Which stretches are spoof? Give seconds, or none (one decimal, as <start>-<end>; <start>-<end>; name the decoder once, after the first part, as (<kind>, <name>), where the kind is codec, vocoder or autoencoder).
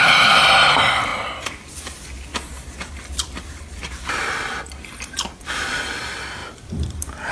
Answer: 1.1-1.8 (vocoder, BigVGAN v2); 6.4-7.3